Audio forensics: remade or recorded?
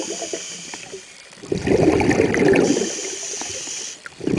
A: recorded